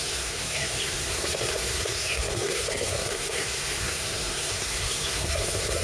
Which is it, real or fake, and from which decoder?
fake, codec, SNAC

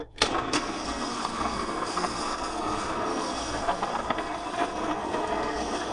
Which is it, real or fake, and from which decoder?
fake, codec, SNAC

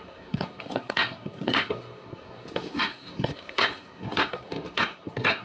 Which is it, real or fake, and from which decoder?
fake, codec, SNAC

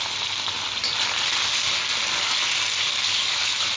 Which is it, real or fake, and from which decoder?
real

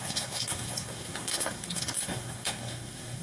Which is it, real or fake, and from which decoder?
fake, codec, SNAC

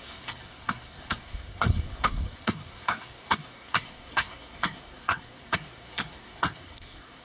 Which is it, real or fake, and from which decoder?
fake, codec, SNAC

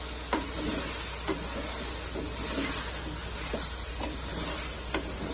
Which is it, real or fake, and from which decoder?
real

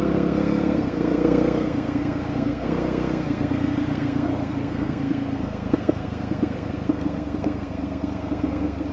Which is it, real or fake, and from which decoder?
fake, codec, SNAC